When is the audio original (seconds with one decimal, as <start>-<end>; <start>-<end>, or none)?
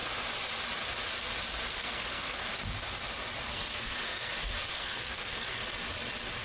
0.0-1.7; 2.5-3.5; 5.6-6.4